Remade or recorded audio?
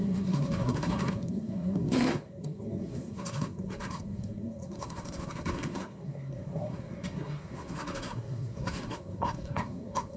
remade